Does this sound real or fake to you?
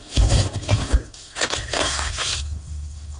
fake